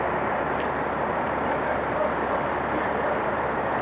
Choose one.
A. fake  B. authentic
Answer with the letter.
B